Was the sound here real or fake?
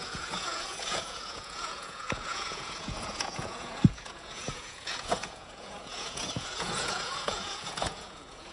fake